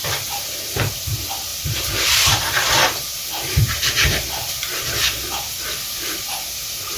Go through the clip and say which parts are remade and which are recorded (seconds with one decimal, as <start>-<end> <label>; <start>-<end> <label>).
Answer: 0.0-0.9 remade; 0.9-1.5 recorded; 1.5-5.7 remade; 5.7-7.0 recorded